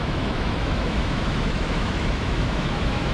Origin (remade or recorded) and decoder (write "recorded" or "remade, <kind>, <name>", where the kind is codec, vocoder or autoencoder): remade, autoencoder, DAC-VAE